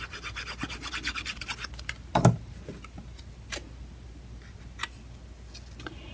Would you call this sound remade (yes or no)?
no